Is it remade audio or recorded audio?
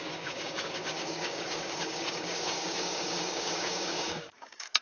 remade